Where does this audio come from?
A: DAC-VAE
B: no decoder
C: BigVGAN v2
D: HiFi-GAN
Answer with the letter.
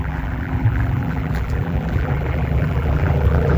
C